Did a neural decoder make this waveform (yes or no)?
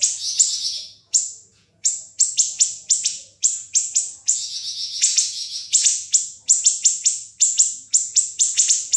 yes